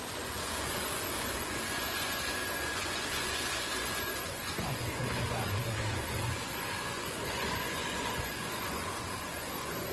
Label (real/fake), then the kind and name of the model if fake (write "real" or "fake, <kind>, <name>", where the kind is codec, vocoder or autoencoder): fake, vocoder, Vocos